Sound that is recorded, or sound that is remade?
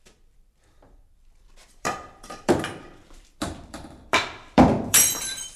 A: remade